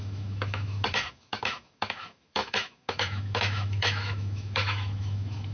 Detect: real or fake fake